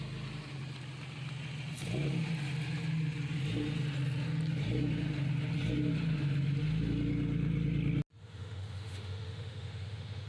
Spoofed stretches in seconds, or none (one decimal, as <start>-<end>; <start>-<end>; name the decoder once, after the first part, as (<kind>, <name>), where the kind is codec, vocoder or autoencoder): 8.2-10.3 (autoencoder, DAC-VAE)